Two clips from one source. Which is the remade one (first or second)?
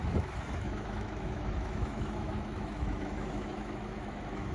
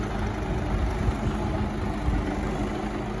first